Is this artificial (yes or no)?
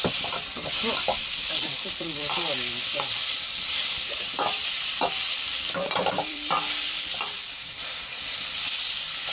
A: yes